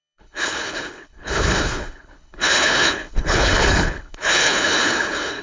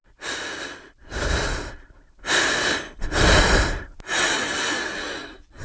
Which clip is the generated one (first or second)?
first